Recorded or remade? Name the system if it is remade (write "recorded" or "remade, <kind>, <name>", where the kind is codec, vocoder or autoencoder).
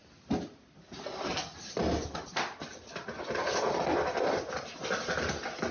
recorded